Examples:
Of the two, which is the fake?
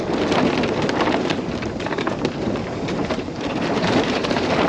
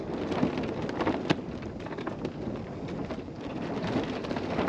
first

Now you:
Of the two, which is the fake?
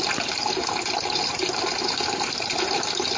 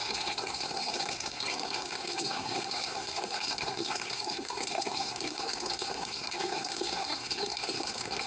second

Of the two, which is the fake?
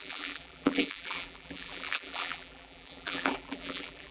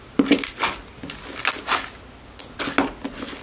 first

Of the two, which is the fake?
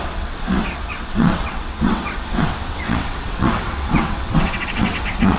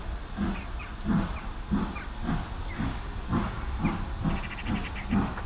first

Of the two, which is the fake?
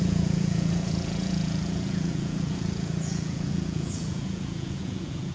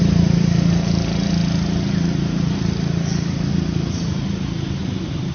first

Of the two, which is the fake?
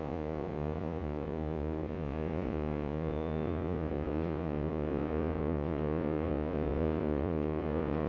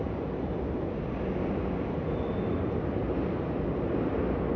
first